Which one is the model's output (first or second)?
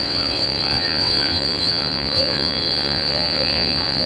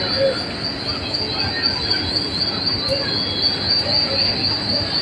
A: first